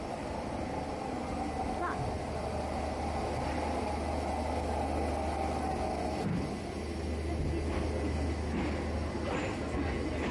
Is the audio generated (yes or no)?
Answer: no